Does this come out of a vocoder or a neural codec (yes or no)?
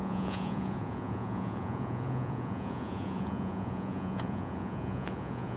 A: yes